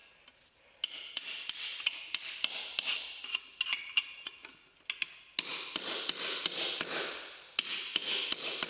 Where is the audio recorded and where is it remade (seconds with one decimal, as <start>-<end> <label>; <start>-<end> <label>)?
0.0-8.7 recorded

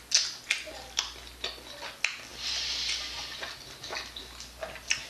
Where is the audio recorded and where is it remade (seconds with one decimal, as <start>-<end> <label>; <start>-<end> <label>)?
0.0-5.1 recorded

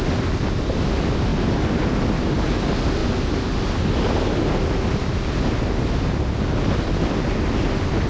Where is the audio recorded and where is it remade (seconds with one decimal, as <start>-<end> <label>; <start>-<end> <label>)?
0.0-8.1 recorded